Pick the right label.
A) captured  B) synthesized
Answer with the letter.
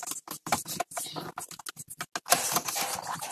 A